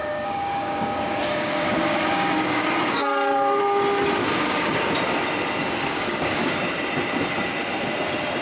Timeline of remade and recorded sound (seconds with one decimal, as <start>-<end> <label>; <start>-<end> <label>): 0.0-3.6 remade; 3.6-4.2 recorded; 4.2-4.9 remade; 4.9-5.6 recorded; 5.6-6.5 remade; 6.5-8.4 recorded